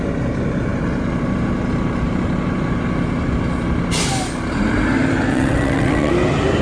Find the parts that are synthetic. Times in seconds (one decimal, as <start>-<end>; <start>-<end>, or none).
5.3-6.1